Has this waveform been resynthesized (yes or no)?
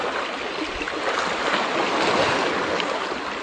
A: no